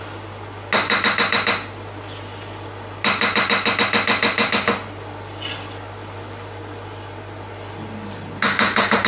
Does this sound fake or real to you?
real